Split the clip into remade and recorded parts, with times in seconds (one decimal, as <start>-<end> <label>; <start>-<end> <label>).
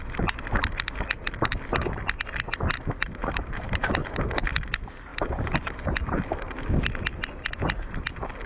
0.0-3.2 recorded; 3.2-3.9 remade; 3.9-8.5 recorded